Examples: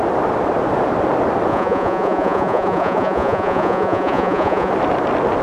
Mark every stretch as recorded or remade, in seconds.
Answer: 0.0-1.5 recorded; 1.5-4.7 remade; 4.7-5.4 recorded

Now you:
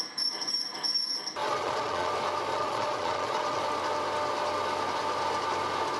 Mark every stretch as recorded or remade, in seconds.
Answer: 0.0-1.4 recorded; 1.4-2.1 remade; 2.1-2.5 recorded; 2.5-3.6 remade; 3.6-6.0 recorded

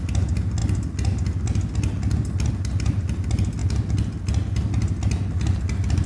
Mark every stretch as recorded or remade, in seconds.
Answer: 0.0-3.6 recorded; 3.6-4.7 remade; 4.7-6.1 recorded

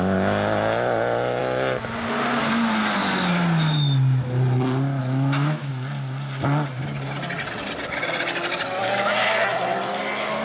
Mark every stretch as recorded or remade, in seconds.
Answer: 0.0-5.0 recorded; 5.0-5.7 remade; 5.7-10.4 recorded

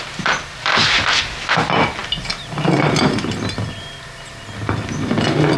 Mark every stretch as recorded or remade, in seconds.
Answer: 0.0-5.6 recorded

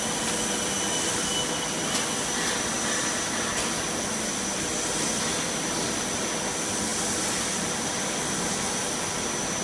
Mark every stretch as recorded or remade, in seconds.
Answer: 0.0-9.6 recorded

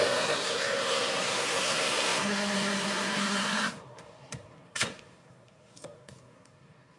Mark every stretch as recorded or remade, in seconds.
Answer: 0.0-7.0 remade